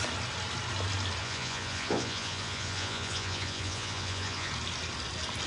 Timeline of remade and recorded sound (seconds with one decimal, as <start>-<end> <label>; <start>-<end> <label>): 0.0-1.2 recorded; 1.2-4.5 remade; 4.5-5.5 recorded